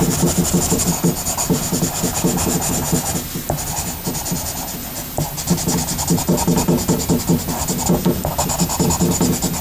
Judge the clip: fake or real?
real